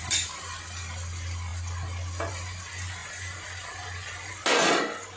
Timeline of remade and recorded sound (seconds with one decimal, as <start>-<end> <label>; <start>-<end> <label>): 0.0-5.2 recorded